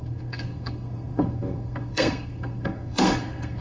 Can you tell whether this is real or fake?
fake